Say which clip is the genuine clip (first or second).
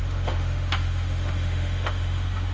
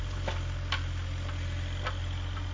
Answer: second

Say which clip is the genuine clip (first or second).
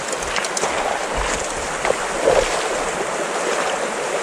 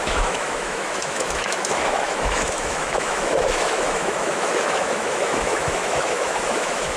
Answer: first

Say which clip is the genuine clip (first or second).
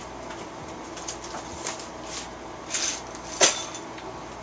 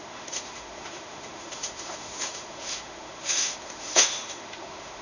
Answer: first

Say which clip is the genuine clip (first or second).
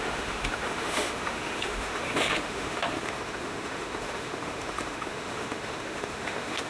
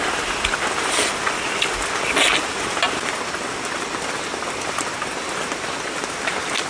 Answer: second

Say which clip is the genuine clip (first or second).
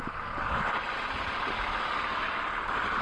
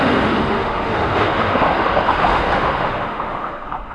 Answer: first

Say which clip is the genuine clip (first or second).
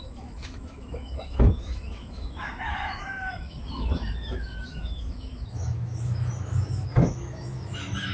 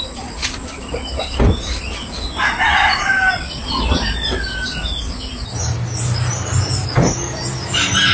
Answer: second